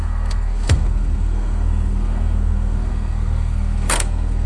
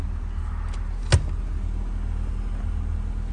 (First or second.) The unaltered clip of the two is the second